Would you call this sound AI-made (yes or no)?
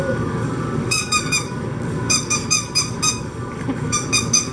yes